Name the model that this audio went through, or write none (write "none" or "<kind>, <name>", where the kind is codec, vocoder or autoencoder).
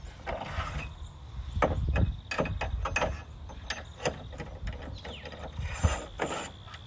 none